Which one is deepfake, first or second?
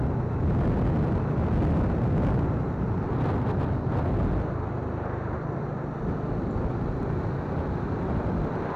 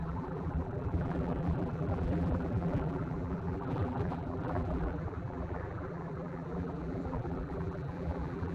second